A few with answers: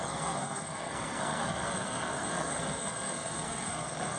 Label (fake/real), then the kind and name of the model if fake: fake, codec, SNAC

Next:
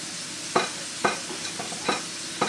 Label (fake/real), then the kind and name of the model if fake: real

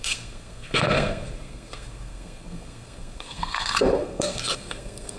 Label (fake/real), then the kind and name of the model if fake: fake, codec, SNAC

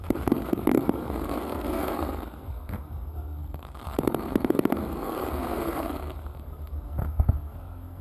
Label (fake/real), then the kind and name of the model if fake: fake, codec, SNAC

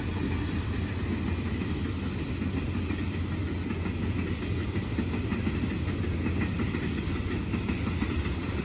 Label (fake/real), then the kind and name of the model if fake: real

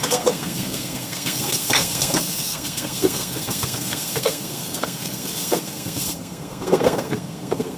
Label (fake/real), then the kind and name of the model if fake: fake, codec, SNAC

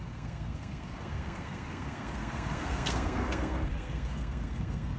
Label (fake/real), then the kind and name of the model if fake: fake, codec, SNAC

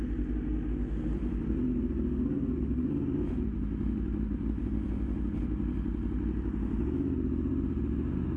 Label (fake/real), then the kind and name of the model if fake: real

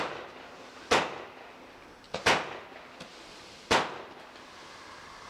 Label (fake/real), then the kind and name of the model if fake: real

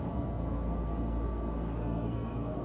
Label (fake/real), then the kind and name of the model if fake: fake, codec, SNAC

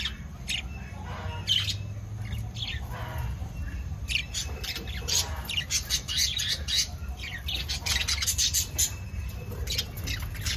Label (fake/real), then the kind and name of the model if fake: real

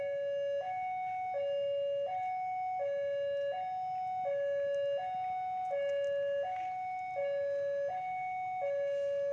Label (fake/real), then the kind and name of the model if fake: real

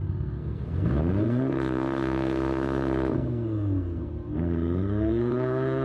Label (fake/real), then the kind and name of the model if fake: fake, codec, SNAC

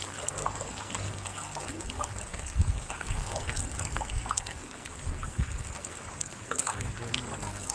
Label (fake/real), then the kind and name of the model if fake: fake, codec, SNAC